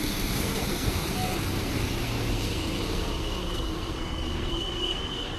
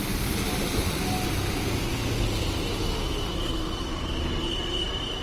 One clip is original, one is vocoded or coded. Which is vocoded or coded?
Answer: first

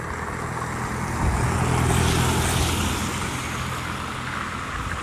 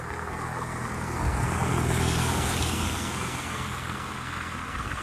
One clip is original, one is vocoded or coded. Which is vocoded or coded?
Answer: second